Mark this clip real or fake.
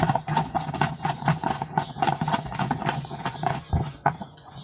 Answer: fake